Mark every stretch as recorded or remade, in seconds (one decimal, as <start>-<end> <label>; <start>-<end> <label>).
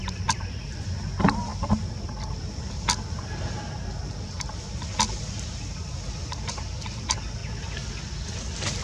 0.0-8.8 recorded